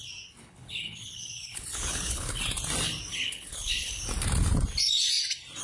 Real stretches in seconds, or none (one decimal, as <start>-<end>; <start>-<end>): 0.0-0.4; 2.4-3.1; 4.0-5.6